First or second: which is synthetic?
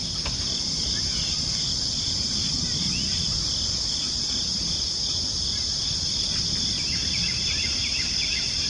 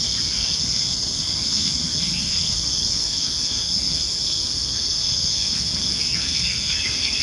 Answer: second